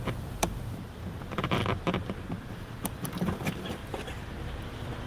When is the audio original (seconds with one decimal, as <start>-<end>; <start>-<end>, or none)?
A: 1.6-2.5; 3.8-5.1